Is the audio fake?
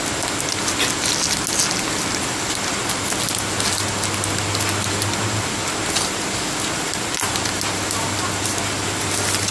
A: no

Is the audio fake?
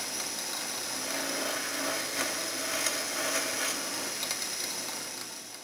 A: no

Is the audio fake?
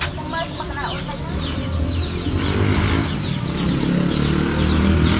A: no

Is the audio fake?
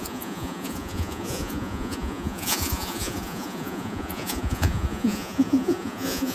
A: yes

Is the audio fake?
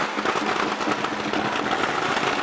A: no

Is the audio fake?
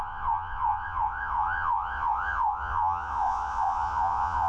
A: yes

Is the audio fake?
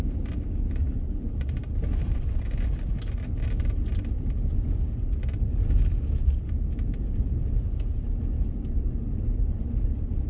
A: no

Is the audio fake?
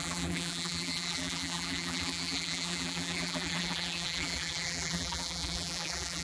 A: yes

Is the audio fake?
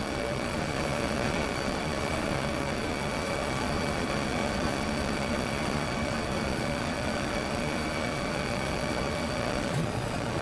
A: yes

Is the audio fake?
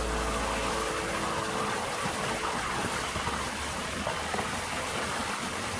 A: no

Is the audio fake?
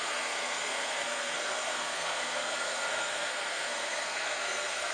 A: yes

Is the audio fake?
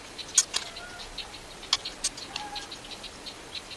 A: no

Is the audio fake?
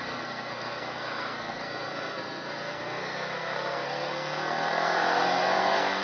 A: yes